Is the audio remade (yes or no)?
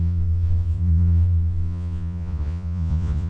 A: yes